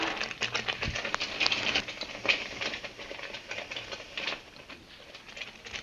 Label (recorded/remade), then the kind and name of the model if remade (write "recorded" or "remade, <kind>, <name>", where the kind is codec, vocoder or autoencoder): recorded